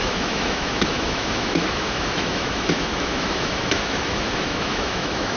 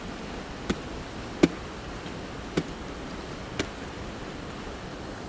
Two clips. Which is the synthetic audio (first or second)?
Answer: first